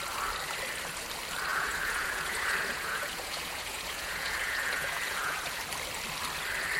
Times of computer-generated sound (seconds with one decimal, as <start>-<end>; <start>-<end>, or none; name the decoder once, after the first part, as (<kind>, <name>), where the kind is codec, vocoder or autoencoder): 1.5-5.6 (vocoder, Vocos)